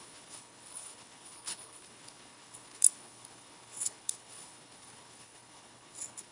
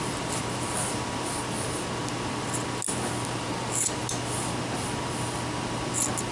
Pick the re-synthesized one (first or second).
first